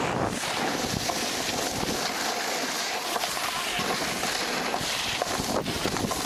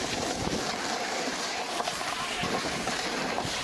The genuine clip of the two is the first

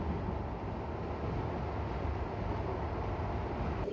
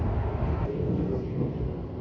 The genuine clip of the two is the first